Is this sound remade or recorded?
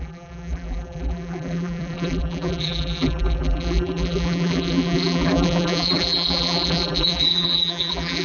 remade